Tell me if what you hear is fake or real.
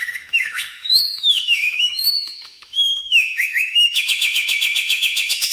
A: fake